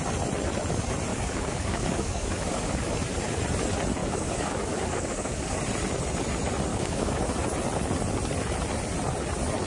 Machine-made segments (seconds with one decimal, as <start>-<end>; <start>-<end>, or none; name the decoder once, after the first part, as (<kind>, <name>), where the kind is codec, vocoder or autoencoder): 1.1-2.9 (codec, DAC); 4.0-5.6; 6.7-7.3